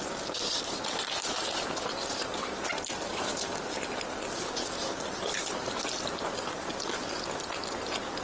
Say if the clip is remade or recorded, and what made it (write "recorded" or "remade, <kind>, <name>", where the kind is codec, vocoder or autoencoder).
recorded